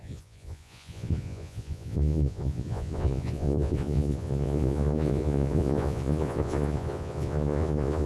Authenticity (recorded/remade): remade